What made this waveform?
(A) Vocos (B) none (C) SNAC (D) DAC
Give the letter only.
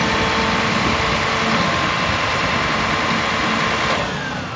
B